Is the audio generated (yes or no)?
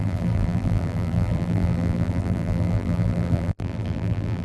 yes